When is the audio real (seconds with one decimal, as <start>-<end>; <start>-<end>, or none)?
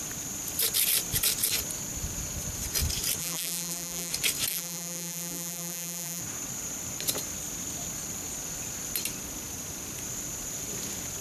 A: 0.0-3.2; 4.1-4.5; 6.2-11.2